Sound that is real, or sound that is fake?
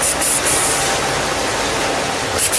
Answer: real